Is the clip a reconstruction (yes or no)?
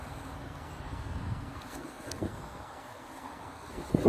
yes